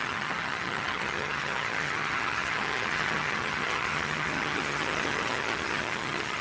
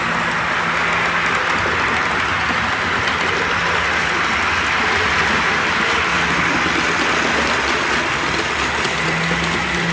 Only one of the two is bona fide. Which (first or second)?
second